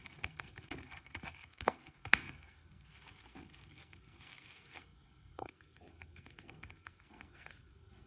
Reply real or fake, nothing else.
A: fake